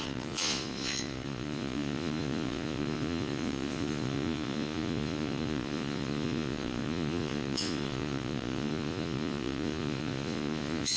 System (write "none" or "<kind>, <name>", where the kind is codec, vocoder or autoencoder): vocoder, Vocos